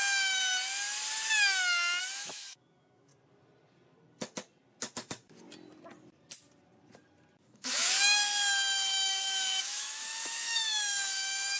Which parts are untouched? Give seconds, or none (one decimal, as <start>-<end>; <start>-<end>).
0.4-2.0; 3.1-7.4